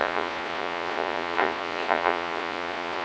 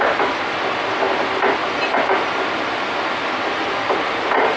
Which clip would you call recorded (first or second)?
second